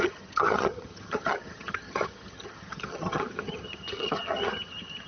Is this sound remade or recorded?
remade